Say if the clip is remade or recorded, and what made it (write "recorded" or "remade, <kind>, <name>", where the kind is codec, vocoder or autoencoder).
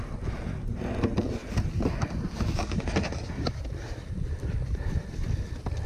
recorded